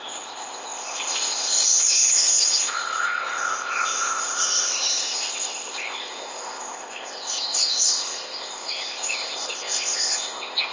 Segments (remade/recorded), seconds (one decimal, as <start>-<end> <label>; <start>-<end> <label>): 0.0-10.7 remade